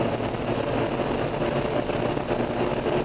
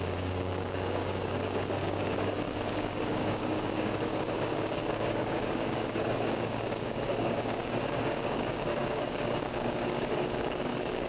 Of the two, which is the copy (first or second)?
second